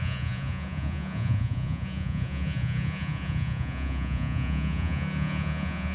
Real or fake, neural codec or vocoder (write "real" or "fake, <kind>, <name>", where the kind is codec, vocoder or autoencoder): fake, vocoder, Vocos